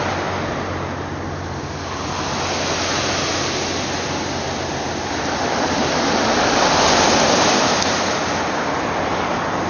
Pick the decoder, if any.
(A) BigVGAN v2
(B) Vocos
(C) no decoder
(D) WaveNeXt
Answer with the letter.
C